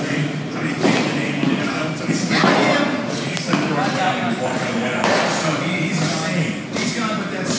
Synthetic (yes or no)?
no